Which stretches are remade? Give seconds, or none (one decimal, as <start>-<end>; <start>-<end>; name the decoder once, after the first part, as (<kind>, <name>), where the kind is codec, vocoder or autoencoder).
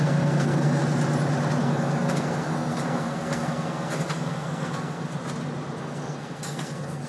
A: 0.0-0.8 (codec, SNAC); 1.6-5.2; 5.8-7.1